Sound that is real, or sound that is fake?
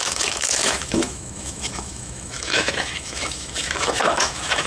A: fake